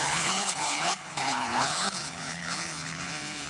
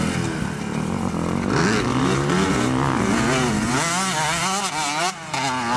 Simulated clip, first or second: first